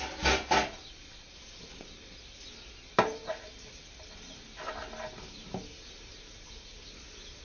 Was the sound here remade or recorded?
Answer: recorded